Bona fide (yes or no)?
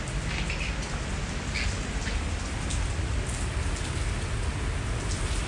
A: yes